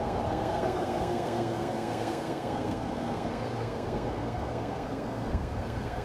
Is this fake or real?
fake